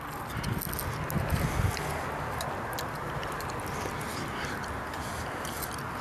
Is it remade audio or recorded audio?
recorded